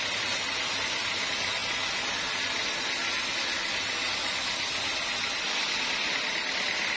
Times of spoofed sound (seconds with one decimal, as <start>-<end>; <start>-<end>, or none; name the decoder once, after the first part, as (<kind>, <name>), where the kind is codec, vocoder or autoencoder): none